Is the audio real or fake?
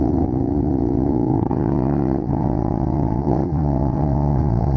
fake